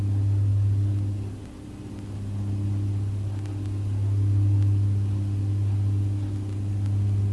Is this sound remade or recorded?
recorded